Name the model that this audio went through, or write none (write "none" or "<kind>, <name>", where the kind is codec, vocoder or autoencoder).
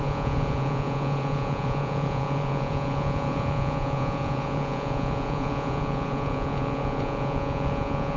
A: vocoder, Vocos